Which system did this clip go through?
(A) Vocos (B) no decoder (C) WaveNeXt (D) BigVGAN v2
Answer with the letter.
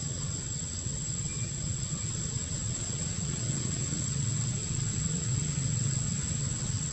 C